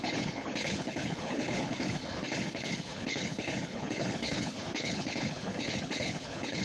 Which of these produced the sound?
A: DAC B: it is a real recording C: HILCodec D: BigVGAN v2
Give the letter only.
C